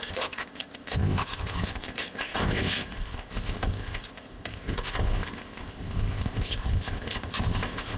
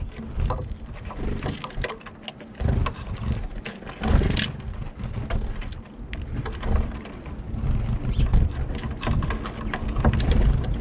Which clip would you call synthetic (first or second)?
first